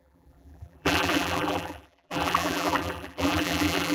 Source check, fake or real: fake